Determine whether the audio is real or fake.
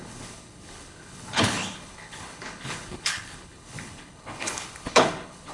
fake